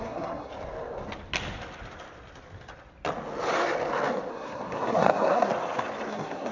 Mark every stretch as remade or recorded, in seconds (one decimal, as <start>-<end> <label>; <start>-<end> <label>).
0.0-0.5 remade; 0.5-4.3 recorded; 4.3-5.5 remade; 5.5-6.1 recorded; 6.1-6.5 remade